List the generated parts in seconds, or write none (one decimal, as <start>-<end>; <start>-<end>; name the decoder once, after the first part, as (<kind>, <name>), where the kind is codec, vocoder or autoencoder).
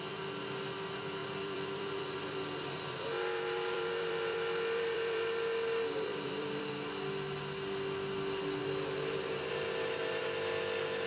1.2-5.3 (vocoder, BigVGAN v2); 6.1-6.7